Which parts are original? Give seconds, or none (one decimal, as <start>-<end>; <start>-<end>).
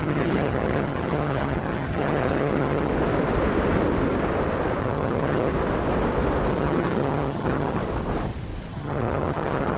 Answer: 2.9-4.8; 5.5-6.5; 7.8-8.7